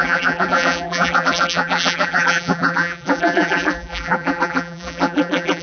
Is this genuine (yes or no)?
no